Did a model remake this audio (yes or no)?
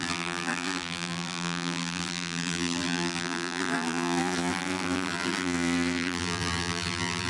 yes